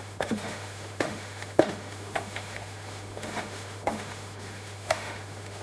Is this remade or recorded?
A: remade